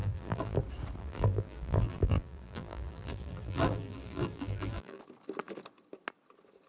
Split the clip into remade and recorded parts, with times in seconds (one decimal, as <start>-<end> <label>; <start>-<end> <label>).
0.0-0.6 remade; 0.6-1.0 recorded; 1.0-5.0 remade; 5.0-6.7 recorded